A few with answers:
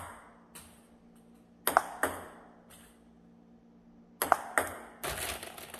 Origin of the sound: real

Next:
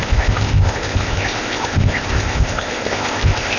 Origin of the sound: fake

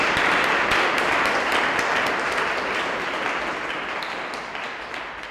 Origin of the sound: real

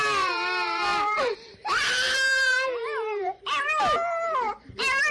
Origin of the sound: fake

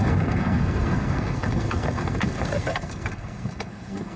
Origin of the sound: fake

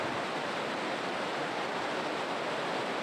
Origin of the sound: real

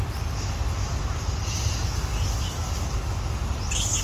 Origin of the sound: real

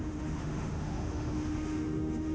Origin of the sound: fake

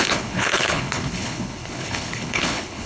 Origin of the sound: fake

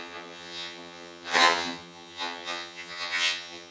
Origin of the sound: fake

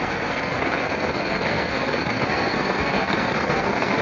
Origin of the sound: fake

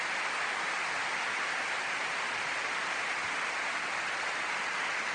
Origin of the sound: real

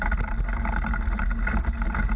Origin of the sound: real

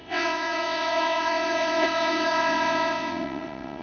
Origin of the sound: fake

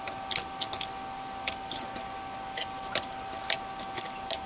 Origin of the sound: real